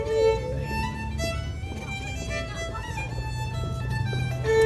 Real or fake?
real